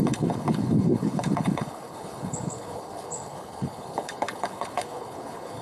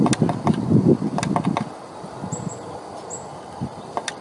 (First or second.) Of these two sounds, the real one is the second